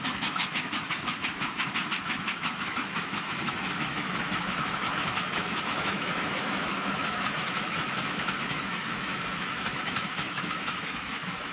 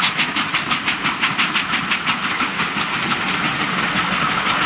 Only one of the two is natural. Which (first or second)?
second